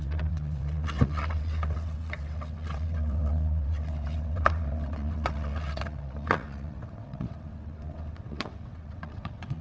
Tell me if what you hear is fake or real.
fake